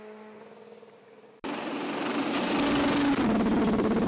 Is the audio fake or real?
real